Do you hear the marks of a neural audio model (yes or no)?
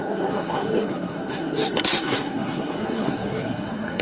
yes